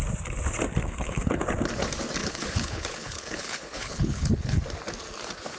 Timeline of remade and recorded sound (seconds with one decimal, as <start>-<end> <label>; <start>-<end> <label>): 0.0-0.8 recorded; 0.8-1.4 remade; 1.4-2.2 recorded; 2.2-4.6 remade; 4.6-5.6 recorded